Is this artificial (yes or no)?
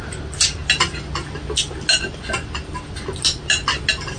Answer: no